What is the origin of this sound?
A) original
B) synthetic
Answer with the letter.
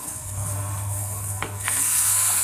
B